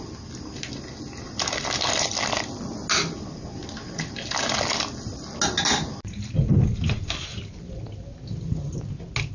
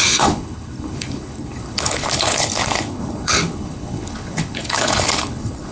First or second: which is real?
first